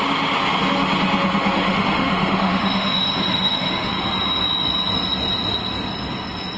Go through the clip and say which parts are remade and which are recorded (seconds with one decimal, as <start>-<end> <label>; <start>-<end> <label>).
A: 0.0-1.4 recorded; 1.4-3.9 remade; 3.9-6.6 recorded

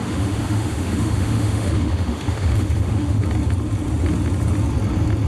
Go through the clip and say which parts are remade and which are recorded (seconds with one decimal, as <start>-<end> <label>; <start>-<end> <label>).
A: 0.0-3.2 remade; 3.2-5.3 recorded